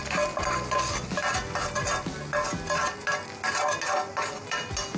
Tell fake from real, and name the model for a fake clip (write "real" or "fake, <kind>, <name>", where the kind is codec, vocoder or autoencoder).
real